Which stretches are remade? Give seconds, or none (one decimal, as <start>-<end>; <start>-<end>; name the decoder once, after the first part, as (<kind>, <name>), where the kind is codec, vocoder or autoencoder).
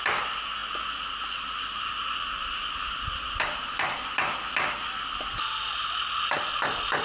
none